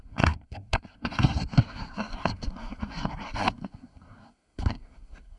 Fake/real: fake